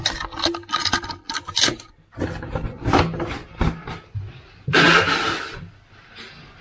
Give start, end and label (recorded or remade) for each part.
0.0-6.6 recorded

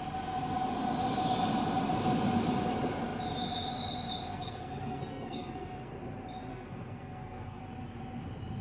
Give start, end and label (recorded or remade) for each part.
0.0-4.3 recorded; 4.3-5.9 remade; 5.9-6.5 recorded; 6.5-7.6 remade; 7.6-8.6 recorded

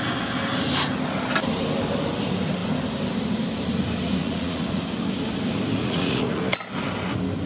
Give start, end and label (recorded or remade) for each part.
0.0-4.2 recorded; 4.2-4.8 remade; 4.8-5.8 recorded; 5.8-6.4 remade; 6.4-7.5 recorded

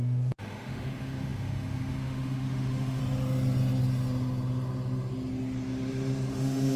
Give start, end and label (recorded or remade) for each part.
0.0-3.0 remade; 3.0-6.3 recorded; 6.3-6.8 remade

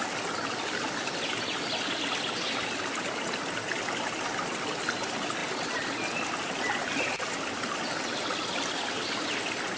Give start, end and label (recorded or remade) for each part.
0.0-9.8 recorded

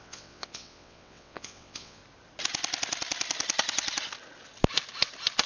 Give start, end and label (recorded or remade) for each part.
0.0-2.0 remade; 2.0-5.5 recorded

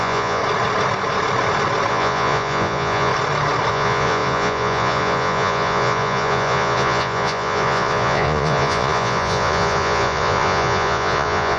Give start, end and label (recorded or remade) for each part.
0.0-0.4 remade; 0.4-1.9 recorded; 1.9-3.1 remade; 3.1-3.7 recorded; 3.7-11.6 remade

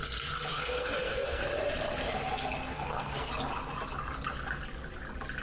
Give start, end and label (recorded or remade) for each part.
0.0-0.5 recorded; 0.5-1.4 remade; 1.4-2.7 recorded; 2.7-3.3 remade; 3.3-5.4 recorded